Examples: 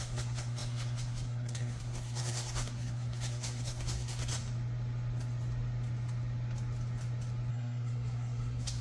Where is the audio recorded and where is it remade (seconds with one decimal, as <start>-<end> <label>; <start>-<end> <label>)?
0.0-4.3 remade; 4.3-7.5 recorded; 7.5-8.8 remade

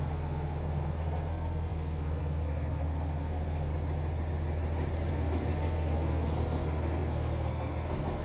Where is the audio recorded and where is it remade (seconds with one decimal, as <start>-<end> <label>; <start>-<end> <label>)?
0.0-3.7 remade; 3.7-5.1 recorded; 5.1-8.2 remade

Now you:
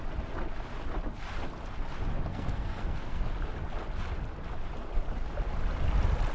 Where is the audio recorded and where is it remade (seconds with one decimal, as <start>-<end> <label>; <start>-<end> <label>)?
0.0-2.3 recorded; 2.3-3.2 remade; 3.2-6.3 recorded

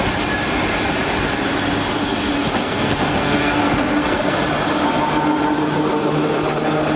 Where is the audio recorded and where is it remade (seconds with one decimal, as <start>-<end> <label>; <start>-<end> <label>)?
0.0-2.6 recorded; 2.6-4.4 remade; 4.4-7.0 recorded

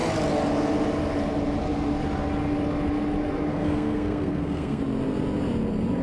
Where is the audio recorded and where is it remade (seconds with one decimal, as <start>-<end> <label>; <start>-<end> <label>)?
0.0-3.5 recorded; 3.5-4.8 remade; 4.8-6.0 recorded